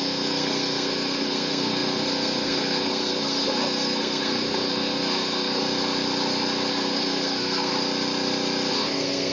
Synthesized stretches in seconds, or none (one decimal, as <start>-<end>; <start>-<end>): 0.0-5.6; 6.7-7.7; 8.7-9.3